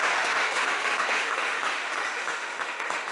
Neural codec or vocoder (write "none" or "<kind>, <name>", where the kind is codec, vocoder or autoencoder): autoencoder, DAC-VAE